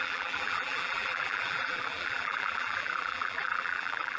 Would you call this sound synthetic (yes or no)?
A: yes